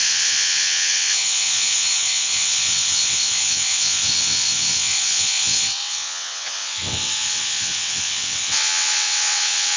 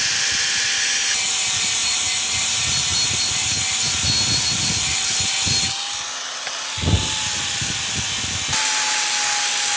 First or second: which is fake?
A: first